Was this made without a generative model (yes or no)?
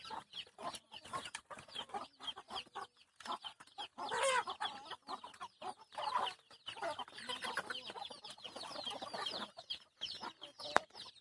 yes